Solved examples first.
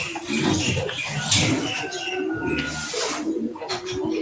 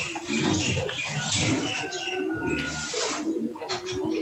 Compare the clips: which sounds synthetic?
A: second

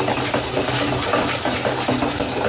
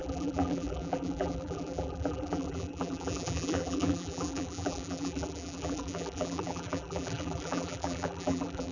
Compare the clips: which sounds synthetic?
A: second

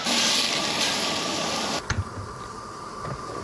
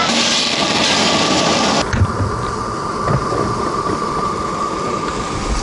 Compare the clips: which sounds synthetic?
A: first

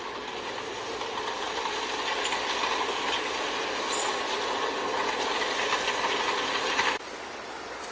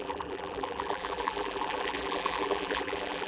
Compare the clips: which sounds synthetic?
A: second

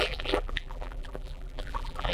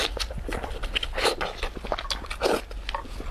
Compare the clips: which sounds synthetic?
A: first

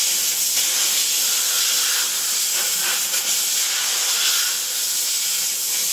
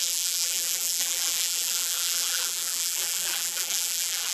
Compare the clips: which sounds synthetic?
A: second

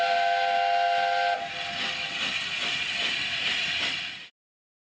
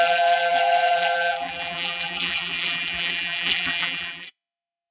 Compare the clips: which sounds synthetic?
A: second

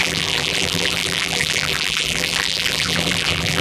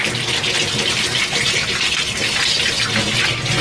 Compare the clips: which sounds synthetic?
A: first